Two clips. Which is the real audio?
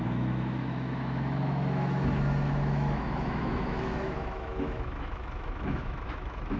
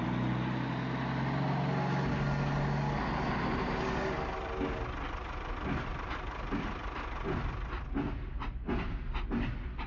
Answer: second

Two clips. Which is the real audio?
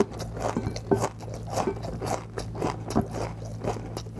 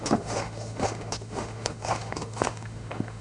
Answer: first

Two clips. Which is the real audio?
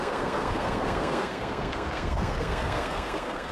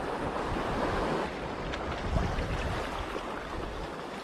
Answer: second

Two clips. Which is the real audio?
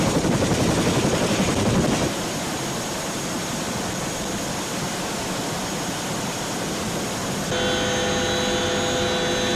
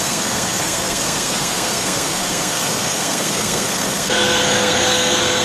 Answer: first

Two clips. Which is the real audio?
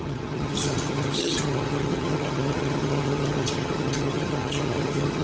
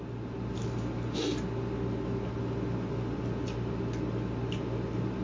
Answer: second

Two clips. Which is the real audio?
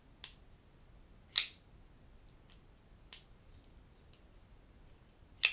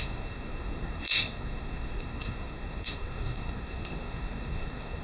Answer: first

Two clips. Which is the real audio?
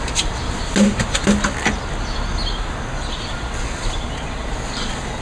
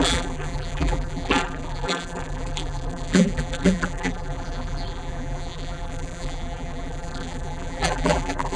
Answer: first